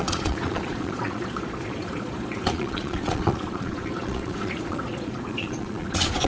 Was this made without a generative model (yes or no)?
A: no